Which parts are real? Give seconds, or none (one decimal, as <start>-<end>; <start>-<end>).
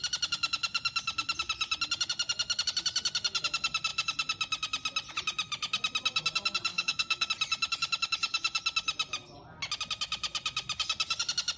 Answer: 0.0-6.7; 7.3-11.6